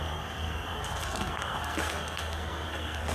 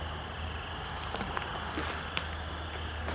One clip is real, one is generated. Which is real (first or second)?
second